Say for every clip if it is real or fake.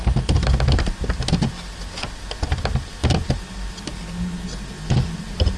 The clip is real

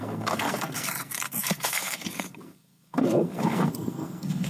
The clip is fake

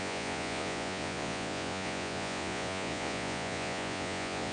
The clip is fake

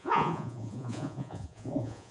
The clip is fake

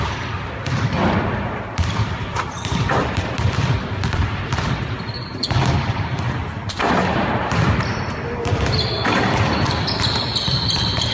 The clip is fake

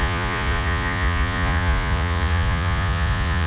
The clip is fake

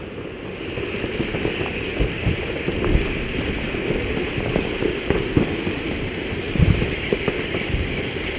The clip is real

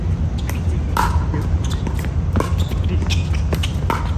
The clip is real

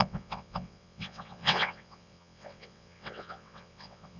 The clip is fake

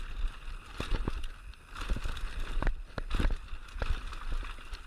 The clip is real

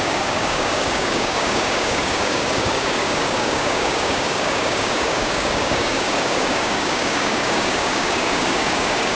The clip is fake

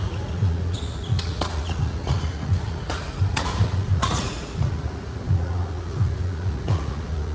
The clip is fake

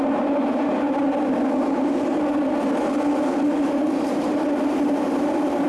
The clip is real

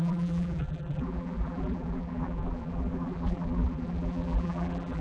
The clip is fake